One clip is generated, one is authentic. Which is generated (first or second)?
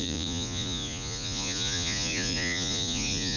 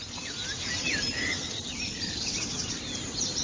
first